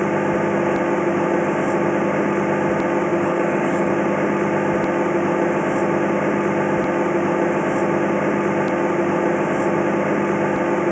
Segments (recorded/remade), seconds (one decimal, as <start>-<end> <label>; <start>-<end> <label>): 0.0-3.1 recorded; 3.1-3.9 remade; 3.9-10.9 recorded